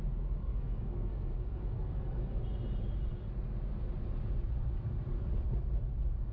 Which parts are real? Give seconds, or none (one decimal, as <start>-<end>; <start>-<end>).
0.0-0.4; 2.4-6.3